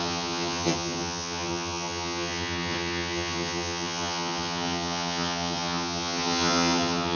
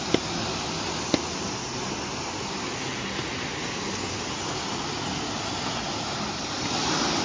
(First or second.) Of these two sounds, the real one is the second